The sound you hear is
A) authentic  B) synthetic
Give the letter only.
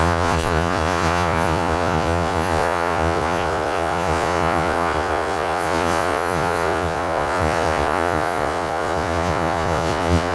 B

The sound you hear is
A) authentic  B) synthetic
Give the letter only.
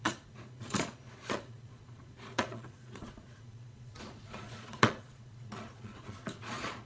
B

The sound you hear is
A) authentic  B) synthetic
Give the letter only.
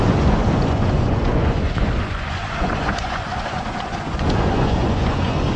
B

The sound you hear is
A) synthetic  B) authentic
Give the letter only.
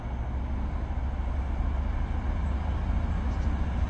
B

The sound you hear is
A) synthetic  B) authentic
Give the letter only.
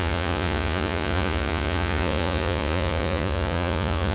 A